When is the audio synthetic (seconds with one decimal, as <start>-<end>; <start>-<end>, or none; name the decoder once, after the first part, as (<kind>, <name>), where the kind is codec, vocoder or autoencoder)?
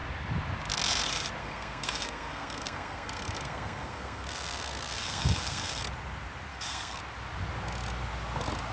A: 1.4-5.8 (codec, SNAC); 6.5-7.0